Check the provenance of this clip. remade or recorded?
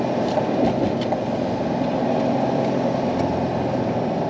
remade